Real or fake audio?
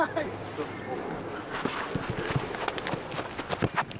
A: real